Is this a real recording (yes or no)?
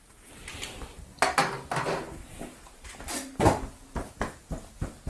yes